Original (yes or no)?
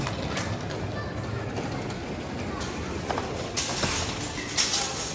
yes